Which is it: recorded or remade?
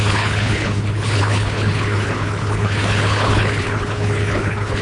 remade